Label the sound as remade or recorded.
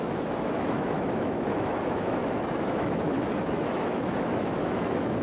remade